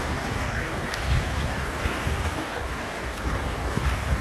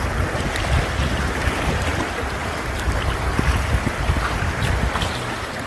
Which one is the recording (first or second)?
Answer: second